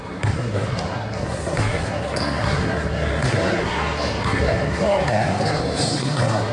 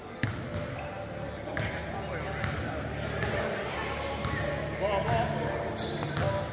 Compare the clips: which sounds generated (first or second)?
first